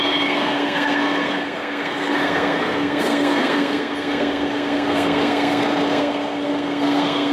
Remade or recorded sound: remade